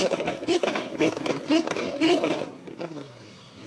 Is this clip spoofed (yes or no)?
yes